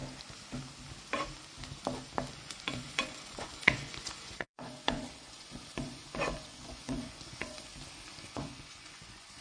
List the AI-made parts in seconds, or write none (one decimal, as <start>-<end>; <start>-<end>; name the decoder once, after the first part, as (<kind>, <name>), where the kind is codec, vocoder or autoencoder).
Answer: 2.3-7.7 (vocoder, Vocos); 8.2-9.4